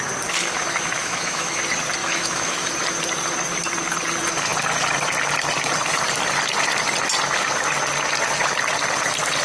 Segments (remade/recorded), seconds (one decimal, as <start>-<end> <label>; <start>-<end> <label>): 0.0-0.4 recorded; 0.4-1.6 remade; 1.6-2.0 recorded; 2.0-2.7 remade; 2.7-9.4 recorded